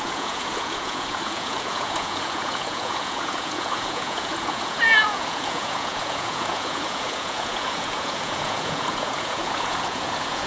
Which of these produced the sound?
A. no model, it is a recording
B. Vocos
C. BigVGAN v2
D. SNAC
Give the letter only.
B